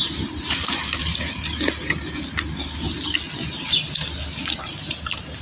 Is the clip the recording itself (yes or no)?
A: yes